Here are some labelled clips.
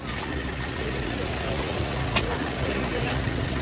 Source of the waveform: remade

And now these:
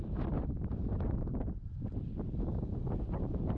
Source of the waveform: recorded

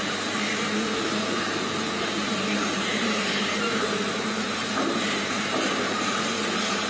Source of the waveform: remade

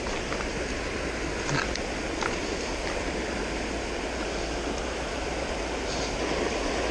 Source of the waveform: recorded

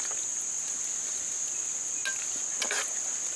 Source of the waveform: recorded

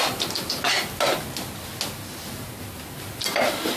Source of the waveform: recorded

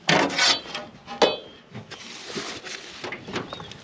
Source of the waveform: recorded